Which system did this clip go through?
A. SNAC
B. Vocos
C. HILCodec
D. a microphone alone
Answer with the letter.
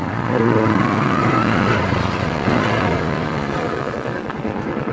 B